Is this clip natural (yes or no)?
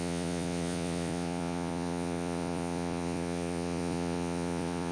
no